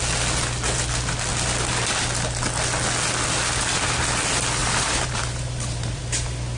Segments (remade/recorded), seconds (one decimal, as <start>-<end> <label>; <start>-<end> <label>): 0.0-4.6 recorded; 4.6-6.0 remade; 6.0-6.6 recorded